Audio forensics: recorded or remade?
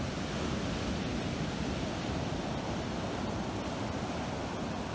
recorded